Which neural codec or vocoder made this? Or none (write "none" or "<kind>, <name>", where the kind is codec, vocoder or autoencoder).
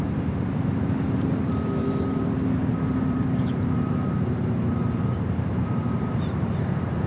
vocoder, BigVGAN v2